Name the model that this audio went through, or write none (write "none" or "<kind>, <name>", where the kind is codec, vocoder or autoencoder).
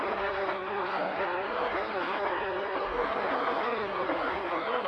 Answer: codec, SNAC